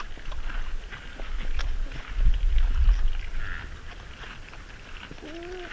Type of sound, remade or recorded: recorded